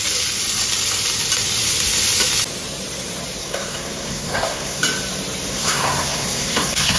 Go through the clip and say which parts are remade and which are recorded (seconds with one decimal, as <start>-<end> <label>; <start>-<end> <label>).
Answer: 0.0-3.4 recorded; 3.4-4.8 remade; 4.8-5.5 recorded; 5.5-7.0 remade